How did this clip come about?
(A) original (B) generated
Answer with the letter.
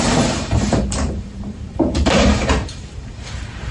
B